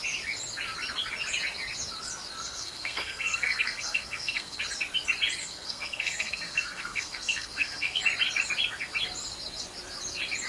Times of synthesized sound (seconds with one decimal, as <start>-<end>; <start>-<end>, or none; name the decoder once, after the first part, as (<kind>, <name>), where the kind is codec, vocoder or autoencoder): 2.4-4.6 (codec, SNAC); 5.4-8.0